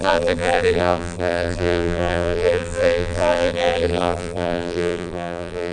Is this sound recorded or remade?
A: remade